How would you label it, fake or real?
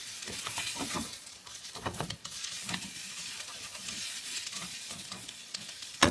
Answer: fake